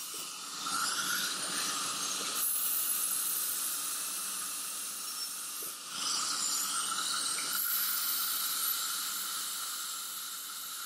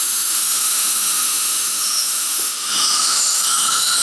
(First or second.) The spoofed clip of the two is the second